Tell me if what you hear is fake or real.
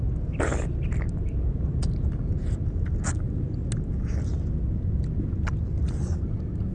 real